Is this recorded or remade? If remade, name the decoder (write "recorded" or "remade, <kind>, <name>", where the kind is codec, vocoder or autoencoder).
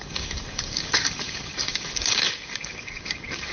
remade, codec, DAC